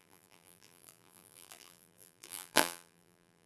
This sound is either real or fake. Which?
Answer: fake